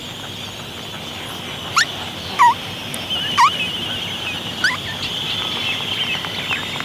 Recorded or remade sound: recorded